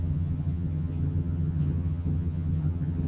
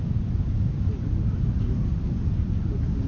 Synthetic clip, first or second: first